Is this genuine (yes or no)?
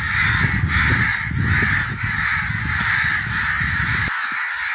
yes